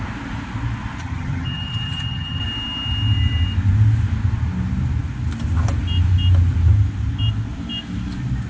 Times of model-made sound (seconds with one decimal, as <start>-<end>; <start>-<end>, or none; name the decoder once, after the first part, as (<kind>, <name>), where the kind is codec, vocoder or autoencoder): 1.0-2.4 (vocoder, HiFi-GAN)